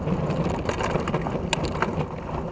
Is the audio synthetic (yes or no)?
no